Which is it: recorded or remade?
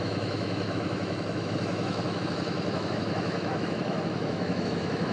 remade